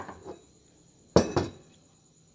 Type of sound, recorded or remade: recorded